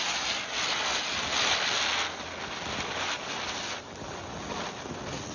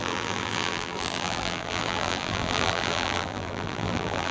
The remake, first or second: second